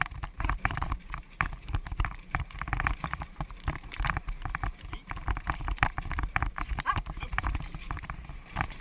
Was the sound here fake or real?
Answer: fake